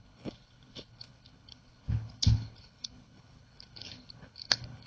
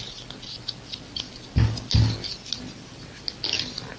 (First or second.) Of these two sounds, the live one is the second